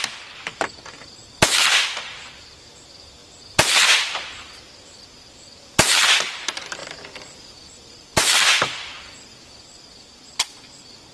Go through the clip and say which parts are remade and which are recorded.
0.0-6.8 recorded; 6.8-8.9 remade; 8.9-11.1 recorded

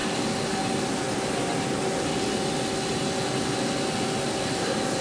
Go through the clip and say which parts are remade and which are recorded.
0.0-5.0 recorded

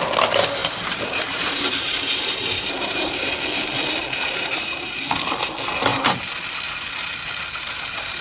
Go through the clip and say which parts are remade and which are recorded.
0.0-0.6 recorded; 0.6-3.3 remade; 3.3-4.2 recorded; 4.2-4.9 remade; 4.9-8.2 recorded

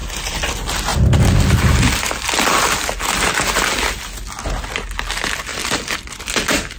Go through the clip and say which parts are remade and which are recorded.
0.0-0.5 remade; 0.5-5.5 recorded; 5.5-6.2 remade; 6.2-6.8 recorded

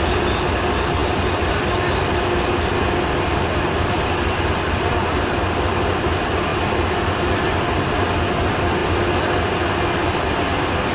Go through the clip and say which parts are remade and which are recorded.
0.0-10.9 recorded

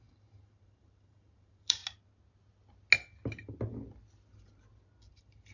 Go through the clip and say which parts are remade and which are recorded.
0.0-1.8 remade; 1.8-5.1 recorded; 5.1-5.5 remade

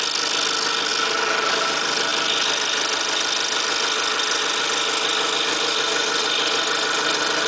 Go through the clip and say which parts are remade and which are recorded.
0.0-7.5 recorded